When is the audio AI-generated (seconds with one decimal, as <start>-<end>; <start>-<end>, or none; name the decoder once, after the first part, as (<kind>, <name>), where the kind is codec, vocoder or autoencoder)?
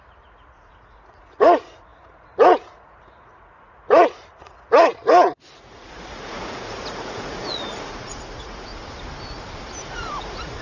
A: 0.0-8.7 (vocoder, Vocos); 9.8-10.6